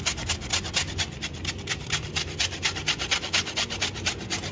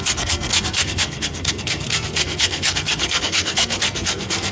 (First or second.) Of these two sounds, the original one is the first